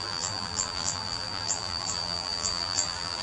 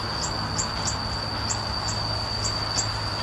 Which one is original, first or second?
second